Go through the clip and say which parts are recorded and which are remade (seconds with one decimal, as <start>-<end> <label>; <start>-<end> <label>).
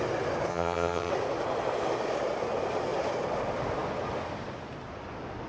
0.0-0.5 recorded; 0.5-1.1 remade; 1.1-5.5 recorded